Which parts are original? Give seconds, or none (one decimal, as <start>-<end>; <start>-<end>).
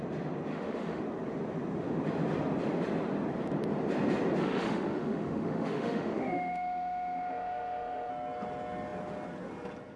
0.0-0.5; 1.0-4.4; 8.1-10.0